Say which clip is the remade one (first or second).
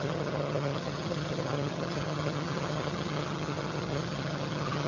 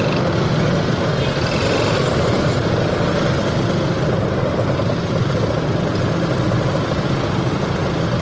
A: first